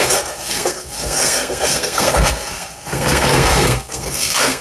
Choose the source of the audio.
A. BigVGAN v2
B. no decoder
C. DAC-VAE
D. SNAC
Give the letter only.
D